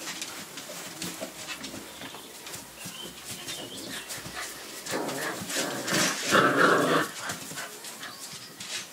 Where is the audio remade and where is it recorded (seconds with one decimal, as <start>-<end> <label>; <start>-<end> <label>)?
0.0-1.5 remade; 1.5-2.3 recorded; 2.3-5.8 remade; 5.8-6.3 recorded; 6.3-8.9 remade